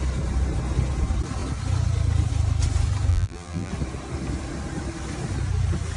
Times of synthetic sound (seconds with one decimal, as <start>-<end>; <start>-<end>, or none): 3.1-3.7